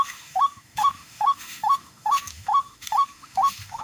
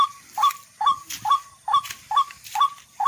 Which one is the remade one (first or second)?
first